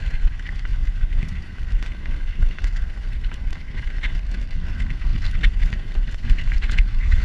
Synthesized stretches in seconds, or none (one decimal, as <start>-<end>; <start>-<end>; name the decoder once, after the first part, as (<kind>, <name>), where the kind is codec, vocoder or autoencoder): 0.0-7.2 (codec, SNAC)